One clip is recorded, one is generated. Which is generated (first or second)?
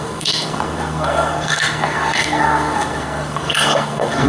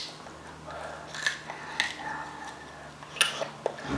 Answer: first